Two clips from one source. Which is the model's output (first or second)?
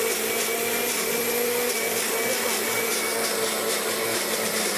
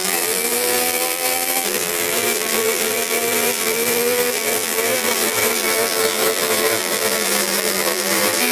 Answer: second